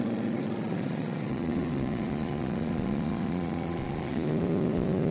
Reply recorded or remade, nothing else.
remade